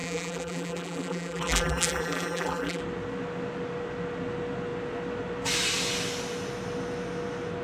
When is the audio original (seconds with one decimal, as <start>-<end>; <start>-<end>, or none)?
2.8-7.6